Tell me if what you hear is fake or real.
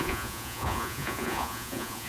fake